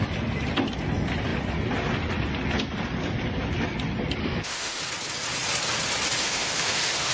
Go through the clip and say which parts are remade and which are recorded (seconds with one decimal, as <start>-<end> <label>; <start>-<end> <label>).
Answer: 0.0-4.2 recorded; 4.2-4.8 remade; 4.8-6.2 recorded; 6.2-7.1 remade